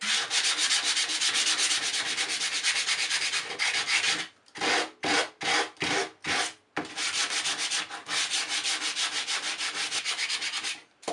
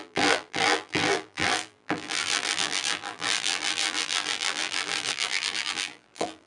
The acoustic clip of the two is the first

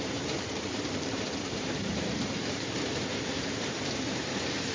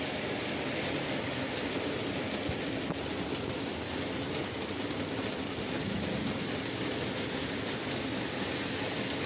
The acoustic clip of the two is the second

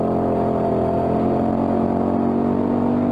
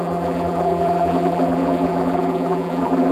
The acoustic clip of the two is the first